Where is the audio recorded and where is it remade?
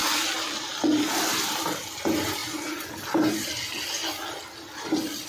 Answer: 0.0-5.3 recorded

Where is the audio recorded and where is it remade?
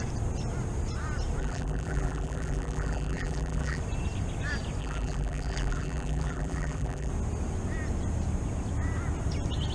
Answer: 0.0-1.4 recorded; 1.4-3.8 remade; 3.8-4.8 recorded; 4.8-7.1 remade; 7.1-9.7 recorded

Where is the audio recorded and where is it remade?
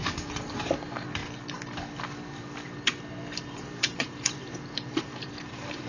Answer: 0.0-0.6 recorded; 0.6-1.2 remade; 1.2-3.4 recorded; 3.4-5.9 remade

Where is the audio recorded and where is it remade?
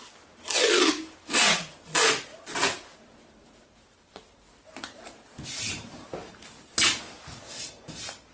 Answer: 0.0-2.3 recorded; 2.3-7.0 remade; 7.0-8.3 recorded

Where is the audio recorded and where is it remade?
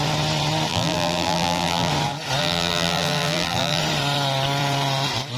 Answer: 0.0-0.7 recorded; 0.7-1.9 remade; 1.9-2.4 recorded; 2.4-3.8 remade; 3.8-5.4 recorded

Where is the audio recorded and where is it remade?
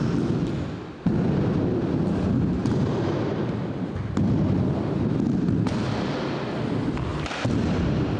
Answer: 0.0-2.6 recorded; 2.6-3.9 remade; 3.9-7.1 recorded; 7.1-8.2 remade